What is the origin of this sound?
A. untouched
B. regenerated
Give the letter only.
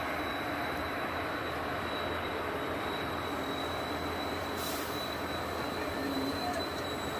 B